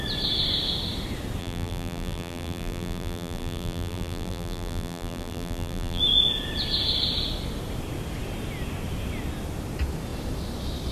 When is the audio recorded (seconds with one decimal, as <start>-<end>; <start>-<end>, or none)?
0.0-1.4; 6.0-10.9